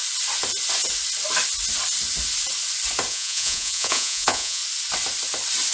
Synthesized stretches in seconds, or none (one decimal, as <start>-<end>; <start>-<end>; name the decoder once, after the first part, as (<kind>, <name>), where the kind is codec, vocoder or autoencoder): 3.1-4.6 (vocoder, Vocos)